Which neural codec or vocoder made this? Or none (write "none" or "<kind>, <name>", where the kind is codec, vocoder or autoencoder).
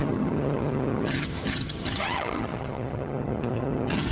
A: vocoder, HiFi-GAN